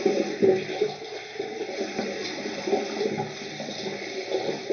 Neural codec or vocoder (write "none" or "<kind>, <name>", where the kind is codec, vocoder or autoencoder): none